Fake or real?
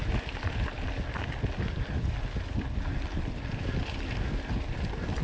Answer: real